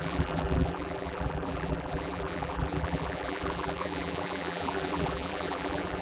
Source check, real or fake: fake